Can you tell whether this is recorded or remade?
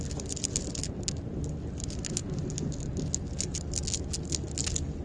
recorded